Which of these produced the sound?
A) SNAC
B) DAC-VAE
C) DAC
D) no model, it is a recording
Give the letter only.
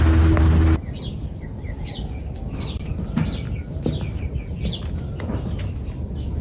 D